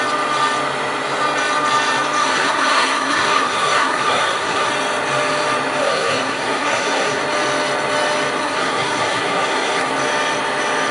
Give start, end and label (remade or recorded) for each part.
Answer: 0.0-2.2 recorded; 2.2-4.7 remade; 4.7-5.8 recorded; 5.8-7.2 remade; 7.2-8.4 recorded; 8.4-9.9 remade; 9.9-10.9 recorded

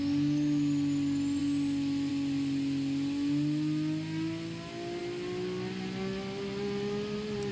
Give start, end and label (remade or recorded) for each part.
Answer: 0.0-7.5 recorded